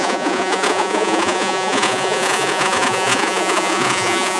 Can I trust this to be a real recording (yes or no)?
no